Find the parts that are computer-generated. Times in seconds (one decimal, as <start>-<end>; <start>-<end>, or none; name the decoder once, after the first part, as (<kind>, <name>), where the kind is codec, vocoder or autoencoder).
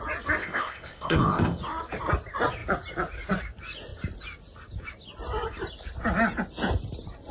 0.4-1.6 (codec, ZipCodec)